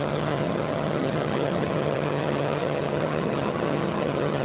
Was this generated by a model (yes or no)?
yes